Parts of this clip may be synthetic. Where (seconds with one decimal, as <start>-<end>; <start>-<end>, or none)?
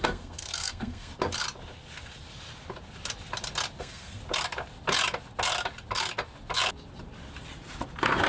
0.0-1.1; 3.8-4.2